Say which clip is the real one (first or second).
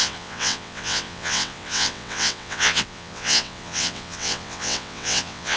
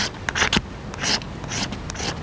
second